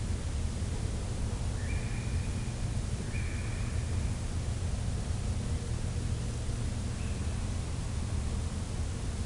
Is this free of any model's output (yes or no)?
yes